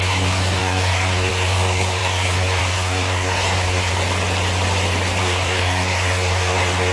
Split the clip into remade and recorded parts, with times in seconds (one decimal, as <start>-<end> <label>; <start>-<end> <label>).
0.0-3.9 remade; 3.9-5.2 recorded; 5.2-6.9 remade